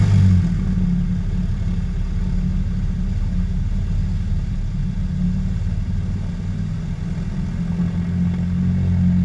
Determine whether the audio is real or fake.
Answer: real